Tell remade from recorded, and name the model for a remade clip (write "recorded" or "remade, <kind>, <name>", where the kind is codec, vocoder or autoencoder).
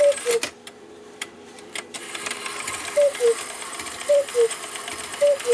remade, vocoder, BigVGAN v2